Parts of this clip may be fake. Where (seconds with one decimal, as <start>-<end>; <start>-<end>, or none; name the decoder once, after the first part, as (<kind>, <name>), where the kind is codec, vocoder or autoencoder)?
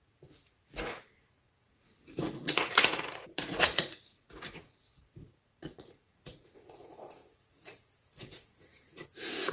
0.0-9.5 (vocoder, Vocos)